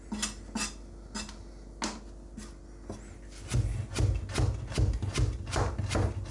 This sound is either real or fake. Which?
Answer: real